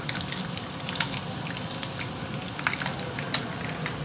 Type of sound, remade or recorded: recorded